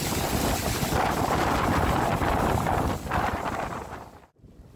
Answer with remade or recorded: recorded